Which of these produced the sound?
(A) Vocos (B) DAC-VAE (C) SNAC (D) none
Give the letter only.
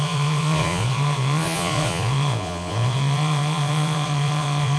A